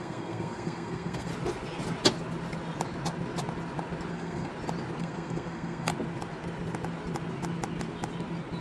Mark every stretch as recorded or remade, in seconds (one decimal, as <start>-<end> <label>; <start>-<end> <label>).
0.0-1.3 remade; 1.3-4.1 recorded; 4.1-4.5 remade; 4.5-5.0 recorded; 5.0-5.9 remade; 5.9-8.6 recorded